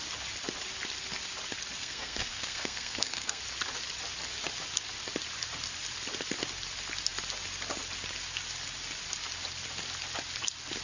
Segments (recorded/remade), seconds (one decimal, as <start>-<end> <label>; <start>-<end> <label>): 0.0-1.8 recorded; 1.8-3.4 remade; 3.4-10.8 recorded